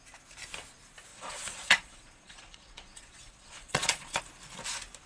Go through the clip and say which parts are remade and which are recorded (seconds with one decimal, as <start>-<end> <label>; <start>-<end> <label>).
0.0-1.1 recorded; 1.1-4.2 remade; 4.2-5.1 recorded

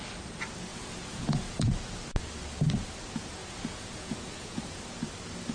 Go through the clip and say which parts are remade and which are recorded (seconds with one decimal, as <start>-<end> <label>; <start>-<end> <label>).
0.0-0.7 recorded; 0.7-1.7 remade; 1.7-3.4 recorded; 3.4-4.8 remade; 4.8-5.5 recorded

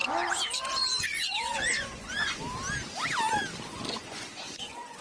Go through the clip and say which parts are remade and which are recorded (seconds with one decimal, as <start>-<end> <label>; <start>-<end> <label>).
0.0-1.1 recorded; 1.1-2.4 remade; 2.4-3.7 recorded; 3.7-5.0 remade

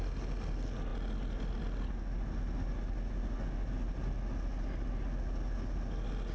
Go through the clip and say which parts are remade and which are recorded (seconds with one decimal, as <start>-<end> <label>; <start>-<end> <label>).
0.0-6.3 recorded

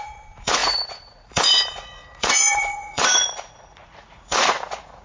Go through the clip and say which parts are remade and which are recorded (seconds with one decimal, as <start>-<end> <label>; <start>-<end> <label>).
0.0-5.0 remade